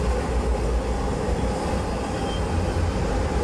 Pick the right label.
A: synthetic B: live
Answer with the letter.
B